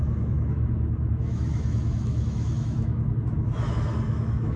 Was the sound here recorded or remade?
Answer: remade